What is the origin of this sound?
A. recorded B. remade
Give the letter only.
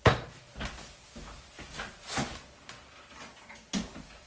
A